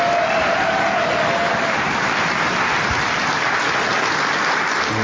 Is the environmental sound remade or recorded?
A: recorded